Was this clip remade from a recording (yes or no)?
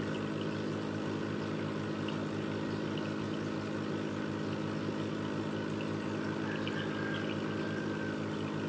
no